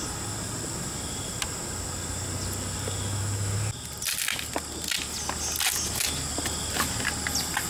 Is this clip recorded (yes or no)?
yes